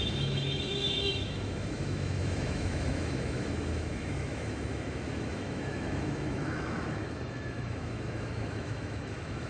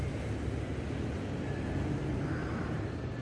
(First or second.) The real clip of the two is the second